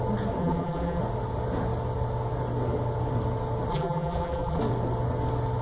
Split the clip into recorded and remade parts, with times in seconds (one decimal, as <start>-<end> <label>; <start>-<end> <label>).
0.0-0.4 recorded; 0.4-1.0 remade; 1.0-3.7 recorded; 3.7-4.6 remade; 4.6-5.6 recorded